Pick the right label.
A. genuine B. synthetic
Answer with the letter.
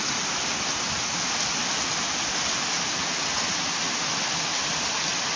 A